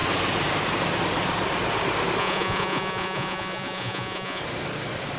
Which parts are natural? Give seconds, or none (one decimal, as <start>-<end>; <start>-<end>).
0.0-2.2; 4.4-5.2